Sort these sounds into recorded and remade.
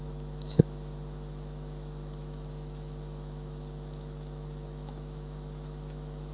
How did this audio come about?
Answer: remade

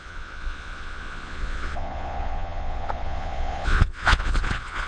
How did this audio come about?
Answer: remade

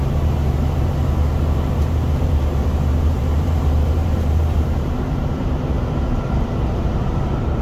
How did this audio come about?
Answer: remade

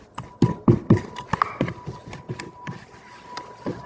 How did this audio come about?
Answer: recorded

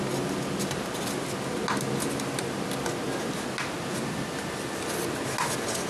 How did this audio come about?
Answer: recorded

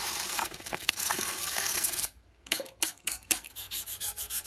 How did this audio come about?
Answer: remade